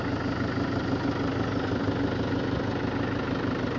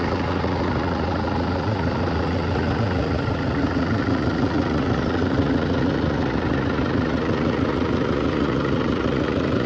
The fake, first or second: second